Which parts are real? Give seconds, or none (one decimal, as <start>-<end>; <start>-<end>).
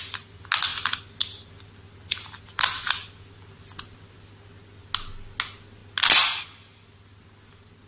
0.0-7.9